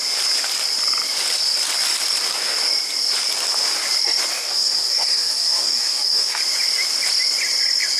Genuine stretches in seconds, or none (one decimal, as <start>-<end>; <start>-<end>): 0.0-4.3; 6.4-8.0

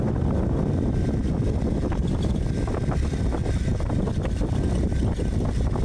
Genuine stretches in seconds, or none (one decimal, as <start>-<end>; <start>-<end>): 0.0-5.8

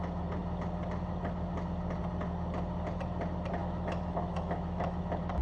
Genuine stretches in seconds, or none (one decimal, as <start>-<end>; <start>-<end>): 0.0-3.6; 5.0-5.4